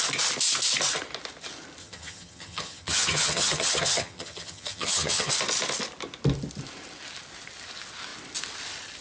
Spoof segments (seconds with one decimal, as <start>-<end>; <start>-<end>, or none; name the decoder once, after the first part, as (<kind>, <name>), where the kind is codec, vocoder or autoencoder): 1.8-5.3 (vocoder, HiFi-GAN)